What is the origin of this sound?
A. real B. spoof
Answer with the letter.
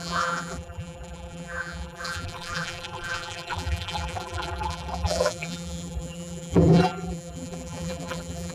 B